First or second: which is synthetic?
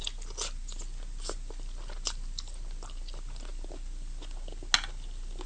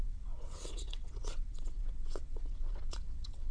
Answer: second